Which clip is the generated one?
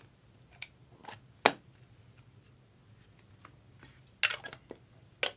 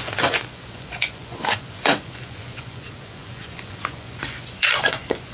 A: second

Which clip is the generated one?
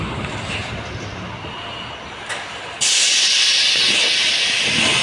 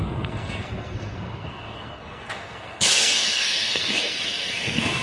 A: second